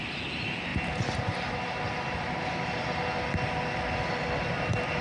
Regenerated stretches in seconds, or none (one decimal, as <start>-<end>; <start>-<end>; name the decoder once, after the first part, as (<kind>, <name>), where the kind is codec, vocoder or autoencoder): none